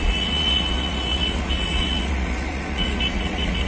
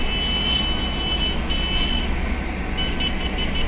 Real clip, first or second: second